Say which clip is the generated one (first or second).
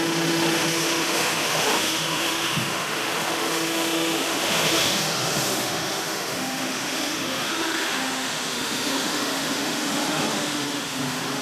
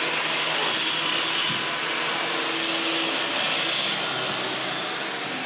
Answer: first